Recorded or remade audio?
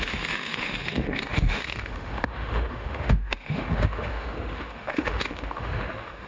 remade